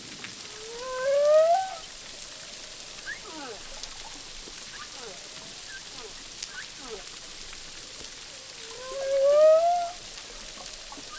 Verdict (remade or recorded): recorded